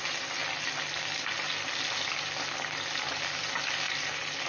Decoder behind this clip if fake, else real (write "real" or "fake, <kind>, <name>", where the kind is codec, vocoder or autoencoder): real